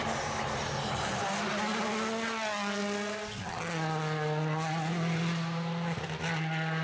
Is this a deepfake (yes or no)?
no